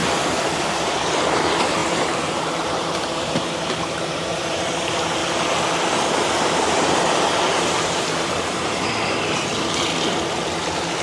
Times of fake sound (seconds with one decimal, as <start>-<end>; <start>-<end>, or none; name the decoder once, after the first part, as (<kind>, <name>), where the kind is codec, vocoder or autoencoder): 0.6-5.2 (vocoder, BigVGAN v2); 6.3-9.9

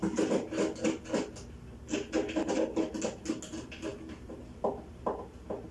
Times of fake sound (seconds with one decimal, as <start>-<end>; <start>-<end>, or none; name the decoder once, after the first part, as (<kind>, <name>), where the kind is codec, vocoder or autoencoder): 3.9-4.7 (vocoder, BigVGAN v2)

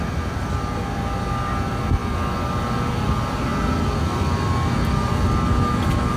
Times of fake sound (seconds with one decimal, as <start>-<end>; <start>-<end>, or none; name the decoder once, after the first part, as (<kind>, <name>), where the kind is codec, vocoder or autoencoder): none

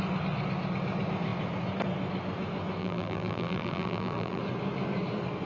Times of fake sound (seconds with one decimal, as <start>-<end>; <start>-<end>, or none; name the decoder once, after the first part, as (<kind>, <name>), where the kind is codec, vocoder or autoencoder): 2.8-4.4 (vocoder, BigVGAN v2)